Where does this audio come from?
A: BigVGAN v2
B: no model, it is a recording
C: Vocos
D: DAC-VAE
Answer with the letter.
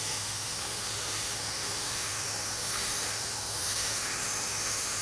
D